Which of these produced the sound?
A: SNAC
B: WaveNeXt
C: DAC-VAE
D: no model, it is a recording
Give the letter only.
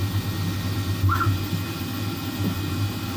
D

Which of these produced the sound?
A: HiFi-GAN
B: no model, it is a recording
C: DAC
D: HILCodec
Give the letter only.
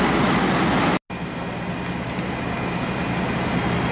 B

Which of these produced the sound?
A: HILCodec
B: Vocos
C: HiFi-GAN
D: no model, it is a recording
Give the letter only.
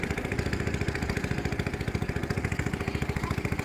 D